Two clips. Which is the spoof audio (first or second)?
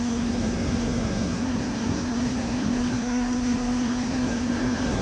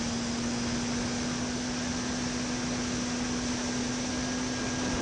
first